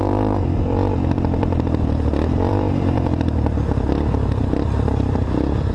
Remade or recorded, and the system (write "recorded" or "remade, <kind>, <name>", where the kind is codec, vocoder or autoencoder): remade, vocoder, BigVGAN v2